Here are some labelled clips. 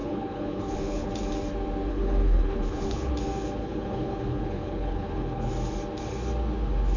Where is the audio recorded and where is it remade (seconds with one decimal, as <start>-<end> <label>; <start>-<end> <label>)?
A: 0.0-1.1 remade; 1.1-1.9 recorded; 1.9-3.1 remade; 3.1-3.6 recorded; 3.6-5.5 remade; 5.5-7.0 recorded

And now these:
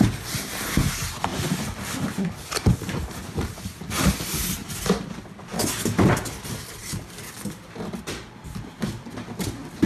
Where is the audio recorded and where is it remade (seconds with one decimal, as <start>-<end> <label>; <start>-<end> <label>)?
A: 0.0-1.3 recorded; 1.3-3.8 remade; 3.8-4.6 recorded; 4.6-5.2 remade; 5.2-6.8 recorded; 6.8-9.1 remade; 9.1-9.9 recorded

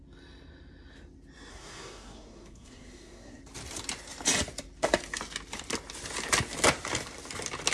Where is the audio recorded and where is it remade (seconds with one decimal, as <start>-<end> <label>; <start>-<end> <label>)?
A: 0.0-1.5 recorded; 1.5-3.4 remade; 3.4-7.7 recorded

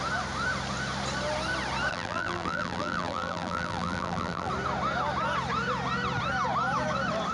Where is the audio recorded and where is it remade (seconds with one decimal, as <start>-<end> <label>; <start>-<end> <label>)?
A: 0.0-1.9 recorded; 1.9-4.5 remade; 4.5-7.3 recorded

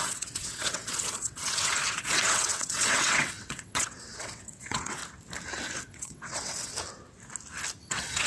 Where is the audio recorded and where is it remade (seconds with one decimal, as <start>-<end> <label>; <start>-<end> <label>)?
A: 0.0-5.0 remade; 5.0-5.9 recorded; 5.9-6.7 remade; 6.7-7.8 recorded; 7.8-8.3 remade

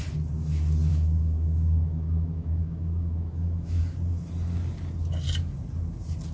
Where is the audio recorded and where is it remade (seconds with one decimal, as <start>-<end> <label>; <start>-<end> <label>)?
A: 0.0-0.9 recorded; 0.9-3.8 remade; 3.8-6.3 recorded